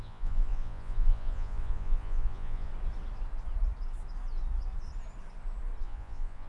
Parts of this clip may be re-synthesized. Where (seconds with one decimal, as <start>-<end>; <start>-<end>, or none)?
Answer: 0.0-2.7; 5.8-6.5